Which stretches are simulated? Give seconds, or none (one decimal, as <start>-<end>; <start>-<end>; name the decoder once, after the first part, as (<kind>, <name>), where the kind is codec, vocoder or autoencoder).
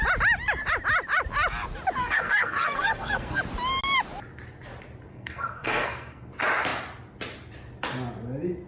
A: 2.0-3.4 (codec, SNAC); 5.1-6.3